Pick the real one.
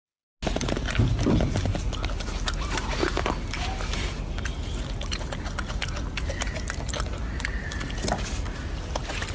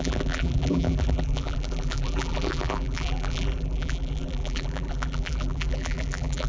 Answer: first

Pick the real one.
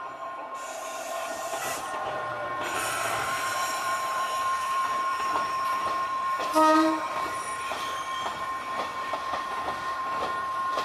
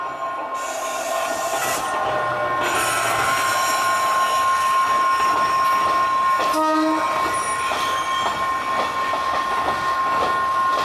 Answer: second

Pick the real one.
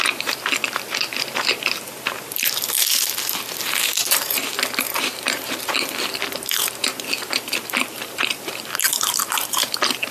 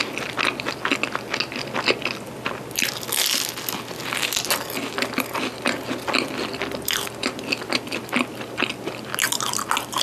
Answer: second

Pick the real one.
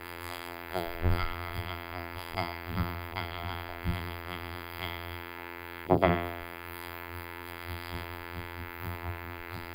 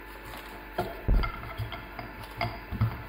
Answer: second